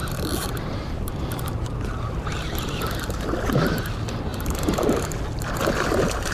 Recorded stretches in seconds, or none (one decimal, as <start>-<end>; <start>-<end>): 3.8-4.3; 4.9-6.3